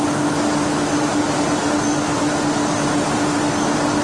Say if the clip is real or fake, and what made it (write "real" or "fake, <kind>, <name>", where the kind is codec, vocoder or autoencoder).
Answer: real